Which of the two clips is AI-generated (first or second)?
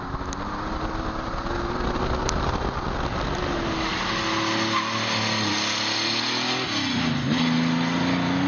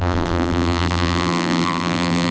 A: second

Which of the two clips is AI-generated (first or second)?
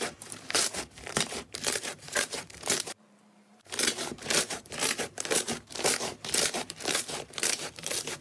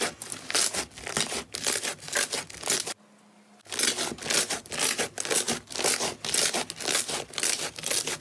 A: first